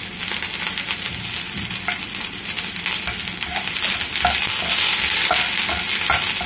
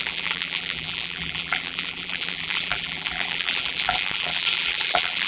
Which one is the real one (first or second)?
first